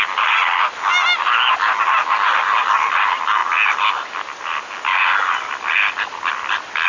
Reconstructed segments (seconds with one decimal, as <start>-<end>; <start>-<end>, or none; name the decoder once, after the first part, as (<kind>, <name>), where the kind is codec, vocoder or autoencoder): none